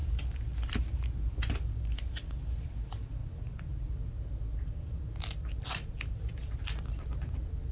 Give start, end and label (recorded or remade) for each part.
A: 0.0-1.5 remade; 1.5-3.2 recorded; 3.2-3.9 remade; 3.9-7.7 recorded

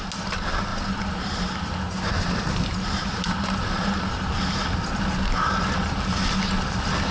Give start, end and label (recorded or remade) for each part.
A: 0.0-0.7 recorded; 0.7-4.3 remade; 4.3-7.1 recorded

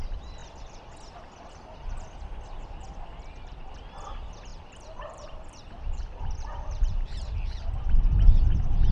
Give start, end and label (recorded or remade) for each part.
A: 0.0-3.2 recorded; 3.2-3.7 remade; 3.7-4.5 recorded; 4.5-7.8 remade; 7.8-8.9 recorded

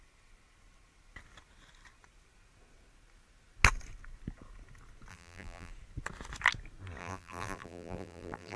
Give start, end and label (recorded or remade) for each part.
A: 0.0-5.1 recorded; 5.1-5.7 remade; 5.7-7.0 recorded; 7.0-8.6 remade

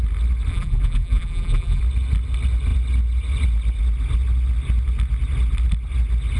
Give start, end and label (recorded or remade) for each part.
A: 0.0-0.5 recorded; 0.5-1.8 remade; 1.8-6.4 recorded

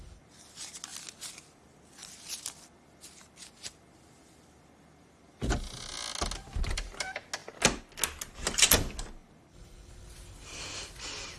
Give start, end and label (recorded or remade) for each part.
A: 0.0-9.2 recorded; 9.2-9.9 remade; 9.9-11.4 recorded

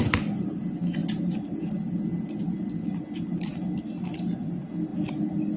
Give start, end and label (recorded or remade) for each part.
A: 0.0-5.6 recorded